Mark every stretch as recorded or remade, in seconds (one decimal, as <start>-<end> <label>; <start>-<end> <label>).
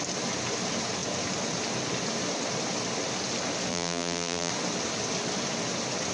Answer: 0.0-3.7 recorded; 3.7-4.5 remade; 4.5-6.1 recorded